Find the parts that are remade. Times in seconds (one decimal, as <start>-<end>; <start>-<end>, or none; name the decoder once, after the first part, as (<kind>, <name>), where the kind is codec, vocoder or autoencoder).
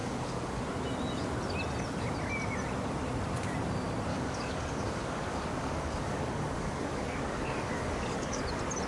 0.0-0.6 (codec, DAC); 4.1-8.4